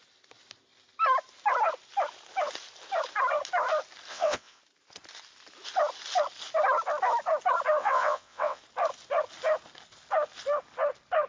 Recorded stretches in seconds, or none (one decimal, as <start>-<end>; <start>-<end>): 0.0-4.1; 4.6-7.8; 8.6-11.3